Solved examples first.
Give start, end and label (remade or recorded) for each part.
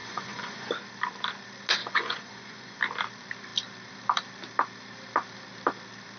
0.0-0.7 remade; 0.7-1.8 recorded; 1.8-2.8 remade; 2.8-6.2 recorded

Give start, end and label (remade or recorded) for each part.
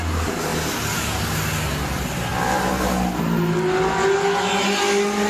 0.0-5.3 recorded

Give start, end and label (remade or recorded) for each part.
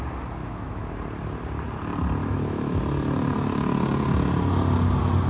0.0-0.4 recorded; 0.4-0.9 remade; 0.9-2.2 recorded; 2.2-2.8 remade; 2.8-5.3 recorded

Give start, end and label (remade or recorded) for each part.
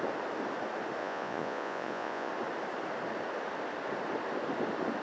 0.0-1.0 recorded; 1.0-2.3 remade; 2.3-5.0 recorded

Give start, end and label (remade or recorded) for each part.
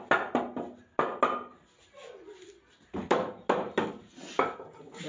0.0-5.1 recorded